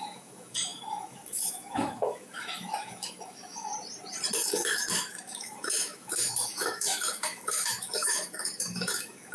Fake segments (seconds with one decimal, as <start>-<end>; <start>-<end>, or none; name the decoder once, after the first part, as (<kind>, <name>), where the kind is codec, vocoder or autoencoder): 0.0-3.7 (autoencoder, DAC-VAE); 4.3-9.3